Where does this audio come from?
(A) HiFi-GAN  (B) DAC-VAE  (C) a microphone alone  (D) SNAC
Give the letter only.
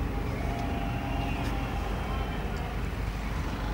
C